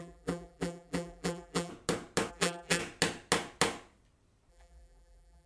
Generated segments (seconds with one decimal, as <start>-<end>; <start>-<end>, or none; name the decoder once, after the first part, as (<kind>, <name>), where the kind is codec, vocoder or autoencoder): 0.0-1.7 (vocoder, BigVGAN v2); 2.3-2.8; 4.5-5.5